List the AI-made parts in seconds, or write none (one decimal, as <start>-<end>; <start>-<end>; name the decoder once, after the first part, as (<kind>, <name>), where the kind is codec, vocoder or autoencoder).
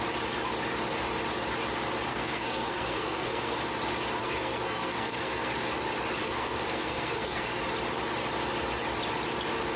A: 2.1-3.6 (codec, SNAC); 4.2-5.5; 6.2-7.6